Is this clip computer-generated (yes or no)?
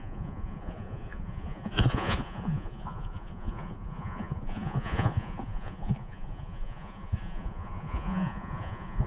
yes